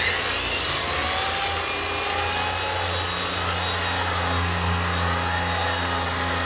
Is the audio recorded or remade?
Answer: recorded